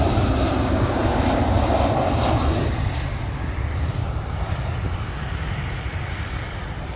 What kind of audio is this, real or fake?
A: real